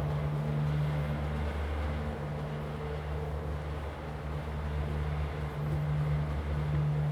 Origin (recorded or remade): recorded